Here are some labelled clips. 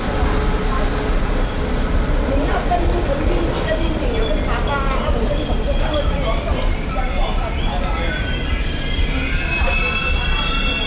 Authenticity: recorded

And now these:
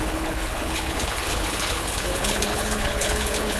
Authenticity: remade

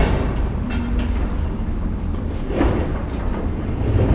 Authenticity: recorded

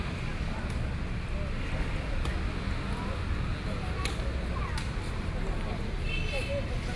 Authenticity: recorded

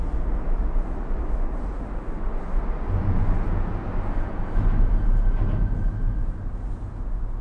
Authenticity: recorded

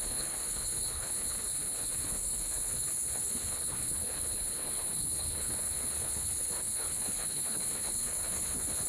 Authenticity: remade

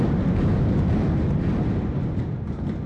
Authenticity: recorded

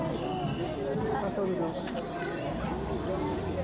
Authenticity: recorded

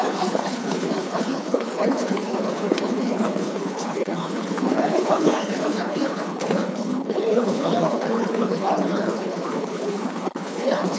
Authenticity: remade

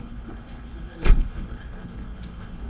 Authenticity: remade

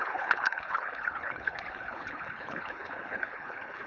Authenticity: remade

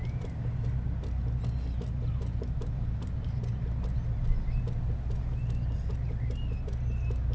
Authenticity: recorded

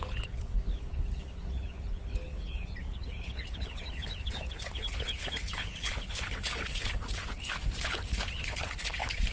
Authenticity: remade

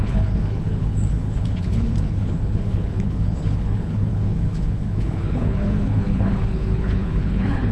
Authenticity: remade